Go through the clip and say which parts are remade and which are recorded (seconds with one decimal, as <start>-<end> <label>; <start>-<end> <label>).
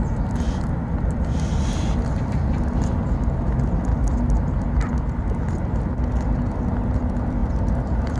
0.0-8.2 recorded